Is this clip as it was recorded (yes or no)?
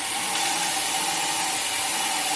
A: yes